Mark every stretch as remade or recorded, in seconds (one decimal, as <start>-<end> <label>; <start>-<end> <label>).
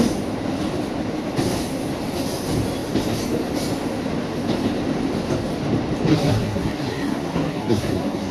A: 0.0-6.1 recorded; 6.1-8.3 remade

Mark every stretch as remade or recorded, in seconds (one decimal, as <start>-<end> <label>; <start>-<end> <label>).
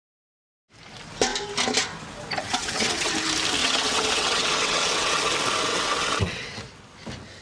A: 0.0-2.4 recorded; 2.4-3.1 remade; 3.1-3.6 recorded; 3.6-5.2 remade; 5.2-5.7 recorded; 5.7-6.6 remade; 6.6-7.4 recorded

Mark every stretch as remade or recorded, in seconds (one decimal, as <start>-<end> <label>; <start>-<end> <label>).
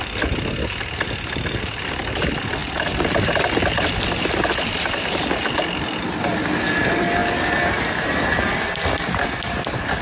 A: 0.0-10.0 recorded